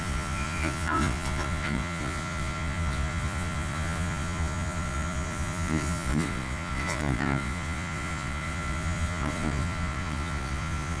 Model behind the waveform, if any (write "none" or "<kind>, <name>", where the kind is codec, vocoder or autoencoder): vocoder, Vocos